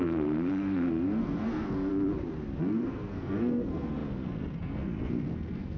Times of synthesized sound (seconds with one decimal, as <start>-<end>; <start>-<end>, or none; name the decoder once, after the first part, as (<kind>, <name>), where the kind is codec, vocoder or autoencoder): 0.0-1.9 (codec, SNAC); 2.6-5.8